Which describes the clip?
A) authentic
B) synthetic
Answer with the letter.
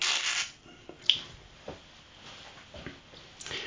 A